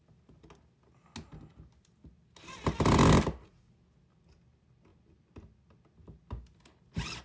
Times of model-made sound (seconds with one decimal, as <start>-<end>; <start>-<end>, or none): none